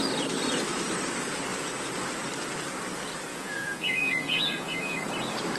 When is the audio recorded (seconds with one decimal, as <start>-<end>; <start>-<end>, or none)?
0.0-3.3; 5.0-5.6